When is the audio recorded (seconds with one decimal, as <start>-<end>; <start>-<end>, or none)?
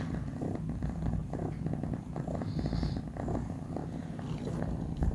0.0-5.1